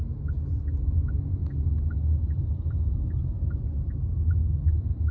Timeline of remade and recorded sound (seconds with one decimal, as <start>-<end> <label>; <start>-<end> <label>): 0.0-5.1 recorded